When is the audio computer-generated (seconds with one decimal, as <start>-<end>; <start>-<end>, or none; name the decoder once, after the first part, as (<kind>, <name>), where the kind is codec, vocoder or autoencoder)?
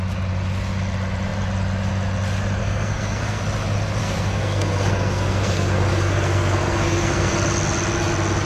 2.6-3.4 (codec, SNAC); 4.0-7.3